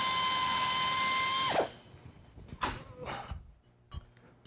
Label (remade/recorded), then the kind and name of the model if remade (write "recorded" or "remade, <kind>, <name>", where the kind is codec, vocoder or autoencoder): recorded